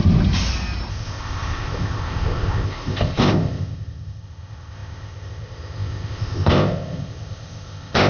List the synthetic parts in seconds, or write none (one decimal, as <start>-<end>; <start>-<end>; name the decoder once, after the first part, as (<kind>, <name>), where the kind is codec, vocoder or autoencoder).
0.9-8.1 (codec, ZipCodec)